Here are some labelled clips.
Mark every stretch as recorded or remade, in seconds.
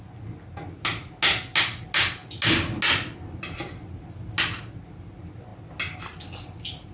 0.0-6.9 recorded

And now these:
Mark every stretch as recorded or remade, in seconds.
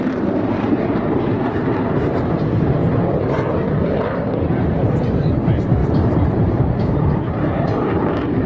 0.0-2.8 remade; 2.8-4.0 recorded; 4.0-8.5 remade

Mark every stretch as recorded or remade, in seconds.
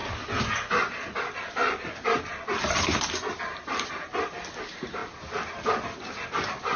0.0-1.2 recorded; 1.2-4.1 remade; 4.1-4.6 recorded; 4.6-5.0 remade; 5.0-6.8 recorded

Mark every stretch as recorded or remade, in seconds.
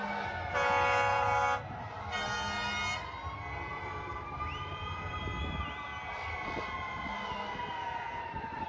0.0-1.1 recorded; 1.1-2.0 remade; 2.0-3.7 recorded; 3.7-5.2 remade; 5.2-8.7 recorded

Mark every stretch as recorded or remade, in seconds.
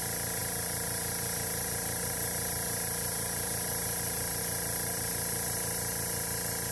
0.0-0.4 recorded; 0.4-4.4 remade; 4.4-6.7 recorded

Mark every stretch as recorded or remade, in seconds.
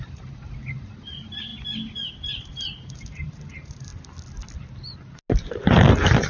0.0-1.5 remade; 1.5-2.1 recorded; 2.1-3.9 remade; 3.9-6.3 recorded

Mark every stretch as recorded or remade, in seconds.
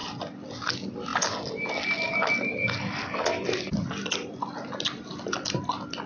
0.0-6.1 recorded